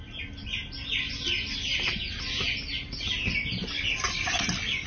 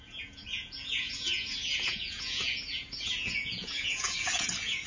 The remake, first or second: second